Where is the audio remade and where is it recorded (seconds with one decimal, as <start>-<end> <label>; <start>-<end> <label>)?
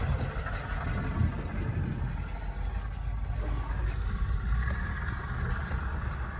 0.0-6.4 recorded